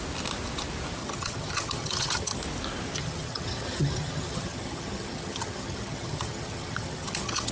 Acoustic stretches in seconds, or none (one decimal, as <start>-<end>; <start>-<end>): 0.0-1.0; 2.4-3.0